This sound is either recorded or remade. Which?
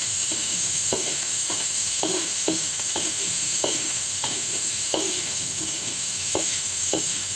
remade